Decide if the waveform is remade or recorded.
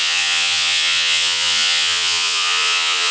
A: remade